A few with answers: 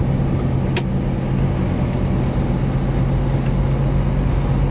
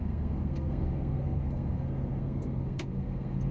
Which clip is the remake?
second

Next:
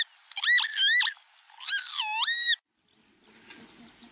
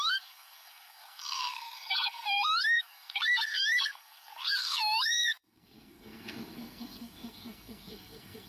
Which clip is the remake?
second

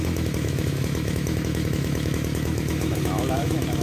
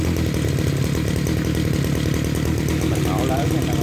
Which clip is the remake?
first